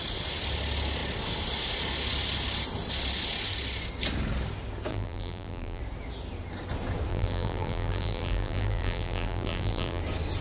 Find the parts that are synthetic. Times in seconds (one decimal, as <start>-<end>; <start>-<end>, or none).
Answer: 4.9-5.8; 7.1-10.0